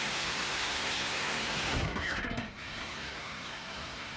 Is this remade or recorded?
remade